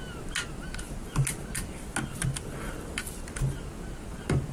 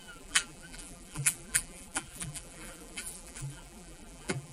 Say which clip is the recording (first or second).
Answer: first